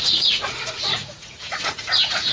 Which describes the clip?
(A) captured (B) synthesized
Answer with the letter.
B